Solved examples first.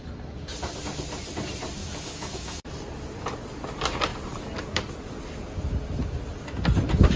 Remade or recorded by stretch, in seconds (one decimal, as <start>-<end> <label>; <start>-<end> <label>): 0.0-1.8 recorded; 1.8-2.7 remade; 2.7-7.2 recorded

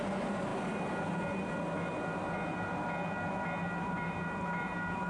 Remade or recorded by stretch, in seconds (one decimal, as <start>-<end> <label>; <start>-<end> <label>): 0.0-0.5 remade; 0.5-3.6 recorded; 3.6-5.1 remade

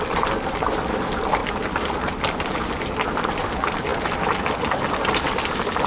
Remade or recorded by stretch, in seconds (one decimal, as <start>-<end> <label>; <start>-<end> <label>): 0.0-1.4 remade; 1.4-2.0 recorded; 2.0-3.9 remade; 3.9-5.3 recorded; 5.3-5.9 remade

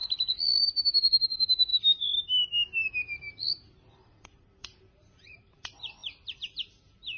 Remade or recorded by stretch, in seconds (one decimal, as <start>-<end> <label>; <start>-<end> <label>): 0.0-0.6 recorded; 0.6-1.7 remade; 1.7-3.9 recorded; 3.9-7.2 remade

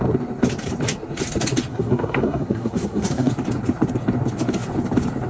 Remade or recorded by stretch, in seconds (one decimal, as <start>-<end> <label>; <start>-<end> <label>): 0.0-1.7 recorded; 1.7-3.3 remade; 3.3-5.3 recorded

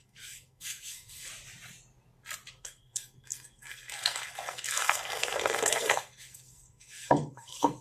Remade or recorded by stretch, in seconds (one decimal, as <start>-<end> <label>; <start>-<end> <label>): 0.0-1.3 remade; 1.3-2.5 recorded; 2.5-7.8 remade

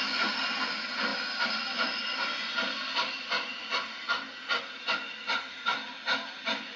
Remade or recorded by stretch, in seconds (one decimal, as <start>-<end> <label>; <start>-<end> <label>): 0.0-6.8 recorded